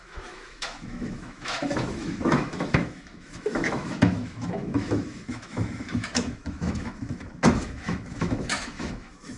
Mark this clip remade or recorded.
remade